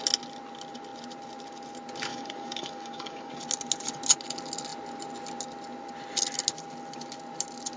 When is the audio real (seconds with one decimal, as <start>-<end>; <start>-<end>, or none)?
0.0-2.1; 3.3-7.8